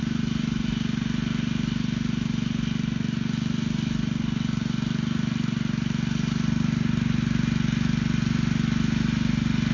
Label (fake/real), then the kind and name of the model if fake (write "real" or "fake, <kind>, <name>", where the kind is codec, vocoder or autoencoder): real